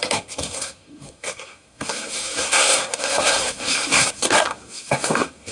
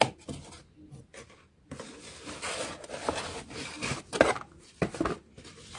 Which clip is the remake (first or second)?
first